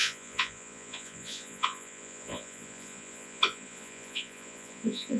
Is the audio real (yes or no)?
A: no